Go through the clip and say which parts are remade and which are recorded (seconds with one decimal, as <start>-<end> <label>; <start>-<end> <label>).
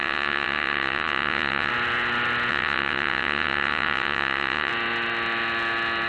0.0-1.7 remade; 1.7-2.5 recorded; 2.5-4.7 remade; 4.7-6.1 recorded